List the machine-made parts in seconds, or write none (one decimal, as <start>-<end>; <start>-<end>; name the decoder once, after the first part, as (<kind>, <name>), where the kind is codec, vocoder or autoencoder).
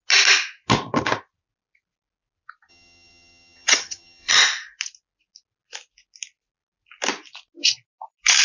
2.7-4.3 (vocoder, HiFi-GAN)